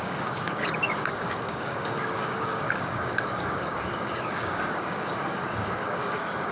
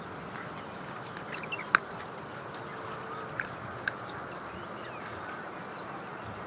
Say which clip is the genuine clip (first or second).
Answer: second